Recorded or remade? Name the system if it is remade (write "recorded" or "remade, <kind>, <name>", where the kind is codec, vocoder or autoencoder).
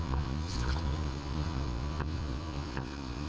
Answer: remade, vocoder, Vocos